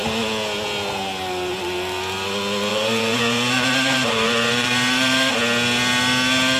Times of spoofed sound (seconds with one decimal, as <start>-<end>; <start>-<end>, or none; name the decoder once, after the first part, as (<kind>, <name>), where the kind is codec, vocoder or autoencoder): 2.7-5.3 (vocoder, BigVGAN v2)